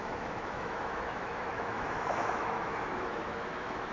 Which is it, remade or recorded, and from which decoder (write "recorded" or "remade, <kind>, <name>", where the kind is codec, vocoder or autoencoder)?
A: remade, autoencoder, DAC-VAE